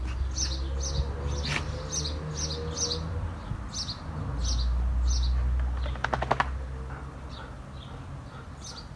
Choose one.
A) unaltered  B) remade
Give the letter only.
A